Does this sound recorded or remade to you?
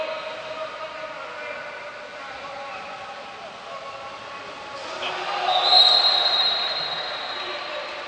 recorded